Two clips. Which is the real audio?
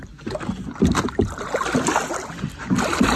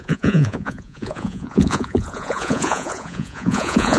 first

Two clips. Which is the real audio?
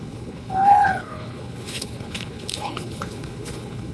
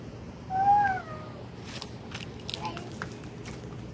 second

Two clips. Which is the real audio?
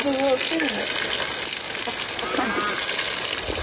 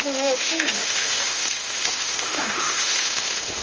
first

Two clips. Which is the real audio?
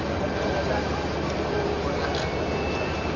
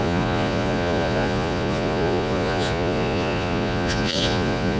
first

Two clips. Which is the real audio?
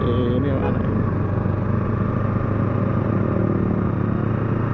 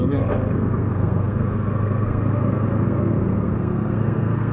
first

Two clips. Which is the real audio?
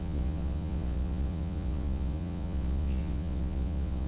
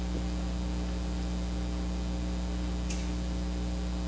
second